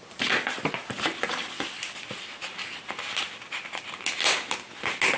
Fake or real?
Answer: real